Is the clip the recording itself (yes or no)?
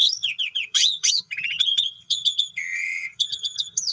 no